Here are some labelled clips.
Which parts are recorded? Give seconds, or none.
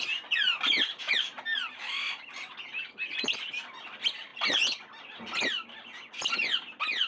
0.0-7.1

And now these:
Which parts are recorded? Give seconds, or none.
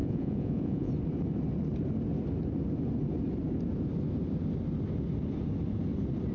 0.9-6.3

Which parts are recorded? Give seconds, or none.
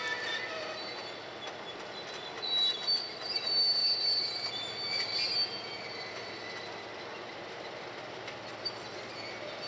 0.0-9.7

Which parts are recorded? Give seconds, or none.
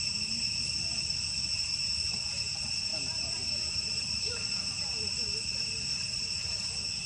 0.0-2.9; 6.2-7.1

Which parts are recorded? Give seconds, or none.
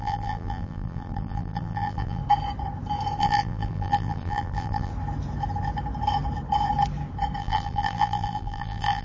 2.2-3.2; 4.9-7.4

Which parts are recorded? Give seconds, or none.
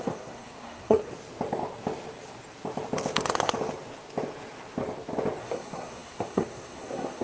1.1-5.4